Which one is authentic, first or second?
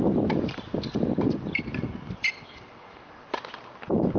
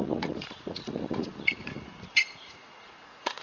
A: first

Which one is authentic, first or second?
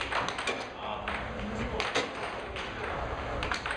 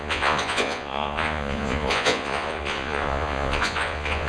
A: first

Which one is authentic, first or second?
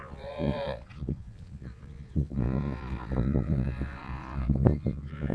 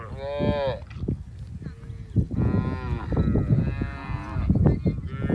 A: second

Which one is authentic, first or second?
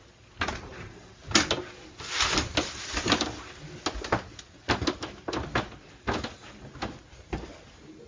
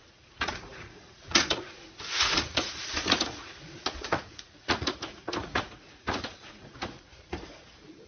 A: first